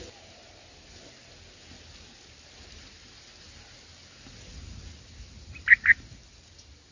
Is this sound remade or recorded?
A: recorded